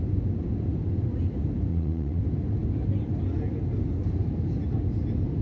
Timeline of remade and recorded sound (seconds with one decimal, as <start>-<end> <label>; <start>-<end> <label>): 0.0-1.7 recorded; 1.7-2.2 remade; 2.2-5.4 recorded